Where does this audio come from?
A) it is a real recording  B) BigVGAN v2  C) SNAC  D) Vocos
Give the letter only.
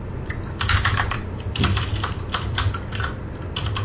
B